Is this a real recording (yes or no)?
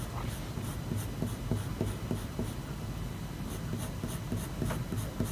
yes